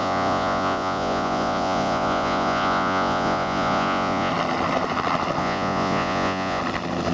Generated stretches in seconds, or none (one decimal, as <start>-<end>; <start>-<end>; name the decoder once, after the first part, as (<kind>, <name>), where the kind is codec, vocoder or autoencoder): 0.0-4.3 (vocoder, Vocos); 5.4-6.6